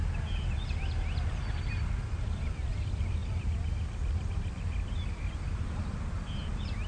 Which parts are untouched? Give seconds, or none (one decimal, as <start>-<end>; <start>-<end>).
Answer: 0.0-6.9